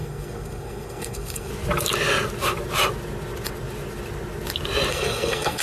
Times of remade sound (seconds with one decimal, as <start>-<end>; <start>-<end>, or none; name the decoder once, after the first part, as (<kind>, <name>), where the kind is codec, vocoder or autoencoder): 0.0-1.5 (codec, SNAC); 4.9-5.6